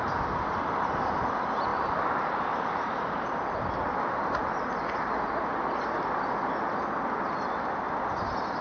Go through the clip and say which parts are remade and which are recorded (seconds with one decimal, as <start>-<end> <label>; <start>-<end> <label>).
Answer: 0.0-1.7 recorded; 1.7-3.2 remade; 3.2-8.6 recorded